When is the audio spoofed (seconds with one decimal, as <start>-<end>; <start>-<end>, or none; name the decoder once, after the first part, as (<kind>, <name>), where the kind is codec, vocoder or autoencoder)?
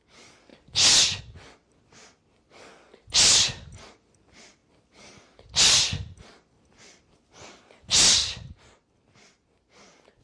none